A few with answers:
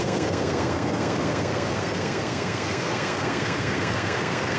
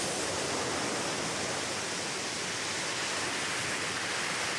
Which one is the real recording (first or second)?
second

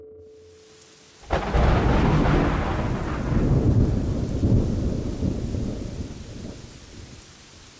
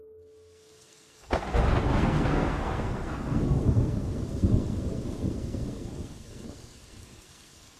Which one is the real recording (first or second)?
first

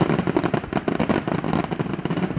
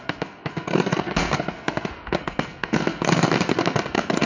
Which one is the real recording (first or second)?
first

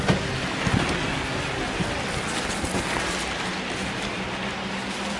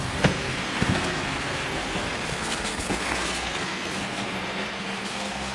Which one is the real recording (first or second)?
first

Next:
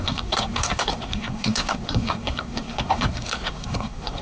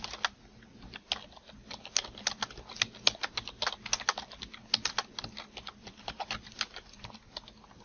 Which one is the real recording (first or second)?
second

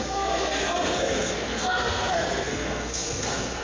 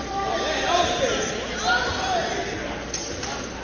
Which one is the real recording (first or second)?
second